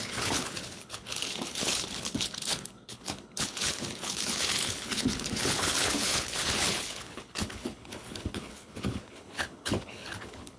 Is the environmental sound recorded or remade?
remade